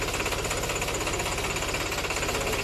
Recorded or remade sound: recorded